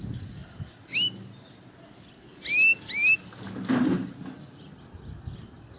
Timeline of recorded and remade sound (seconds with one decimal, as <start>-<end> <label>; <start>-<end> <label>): 0.0-5.8 recorded